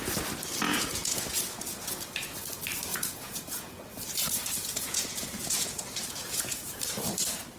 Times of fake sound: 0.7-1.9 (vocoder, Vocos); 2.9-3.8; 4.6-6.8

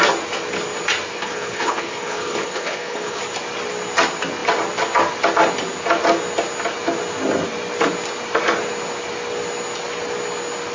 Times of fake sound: 1.1-3.2 (codec, HILCodec)

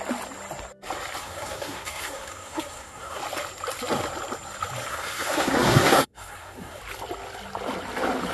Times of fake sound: 1.2-3.2 (codec, SNAC); 4.9-6.8